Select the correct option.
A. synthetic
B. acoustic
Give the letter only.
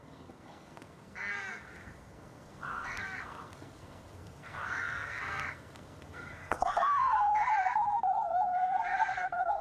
A